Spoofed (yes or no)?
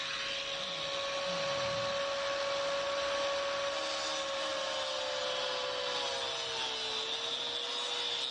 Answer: no